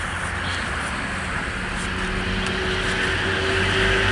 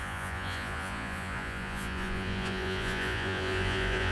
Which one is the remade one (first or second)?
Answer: second